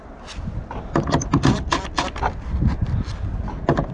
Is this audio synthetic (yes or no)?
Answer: no